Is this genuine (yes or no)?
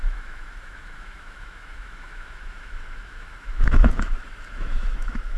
no